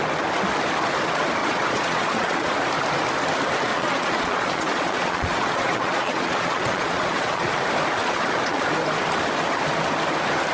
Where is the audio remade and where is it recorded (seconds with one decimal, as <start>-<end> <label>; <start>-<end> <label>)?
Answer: 0.0-1.4 recorded; 1.4-2.5 remade; 2.5-3.7 recorded; 3.7-7.5 remade; 7.5-8.0 recorded; 8.0-8.6 remade; 8.6-10.5 recorded